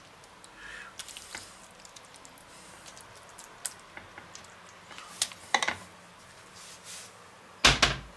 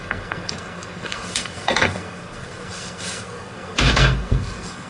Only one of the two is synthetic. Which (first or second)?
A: second